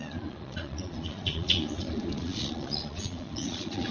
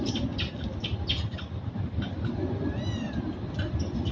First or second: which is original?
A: second